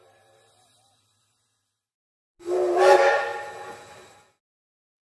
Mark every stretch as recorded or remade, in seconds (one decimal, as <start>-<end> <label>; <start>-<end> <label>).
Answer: 0.0-3.3 remade; 3.3-3.9 recorded; 3.9-5.0 remade